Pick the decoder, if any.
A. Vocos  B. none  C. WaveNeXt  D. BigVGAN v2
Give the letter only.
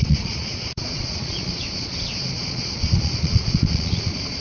A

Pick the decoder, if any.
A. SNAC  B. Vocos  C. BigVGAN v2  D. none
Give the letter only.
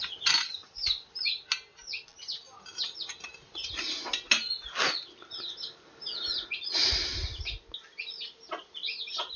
D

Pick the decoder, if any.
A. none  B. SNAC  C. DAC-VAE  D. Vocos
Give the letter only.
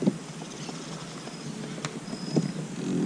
A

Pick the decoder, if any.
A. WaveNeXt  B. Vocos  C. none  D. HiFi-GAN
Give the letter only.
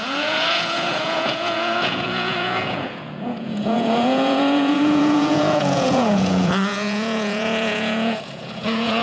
B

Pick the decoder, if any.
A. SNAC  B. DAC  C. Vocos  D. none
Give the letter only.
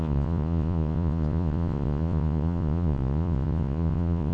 C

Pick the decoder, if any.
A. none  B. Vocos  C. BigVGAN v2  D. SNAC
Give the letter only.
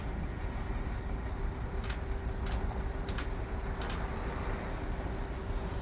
A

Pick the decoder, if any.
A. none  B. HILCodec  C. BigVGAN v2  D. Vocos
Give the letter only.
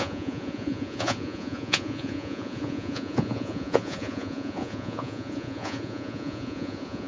D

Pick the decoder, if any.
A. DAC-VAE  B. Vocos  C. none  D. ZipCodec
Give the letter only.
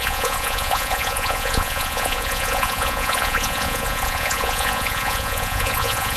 B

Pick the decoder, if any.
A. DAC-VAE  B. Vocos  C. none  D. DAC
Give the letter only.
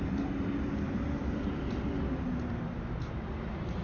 C